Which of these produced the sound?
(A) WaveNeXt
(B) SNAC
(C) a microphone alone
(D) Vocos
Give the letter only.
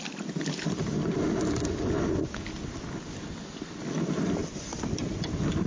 C